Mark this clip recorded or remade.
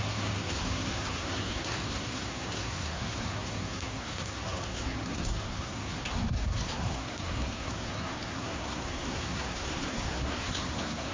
remade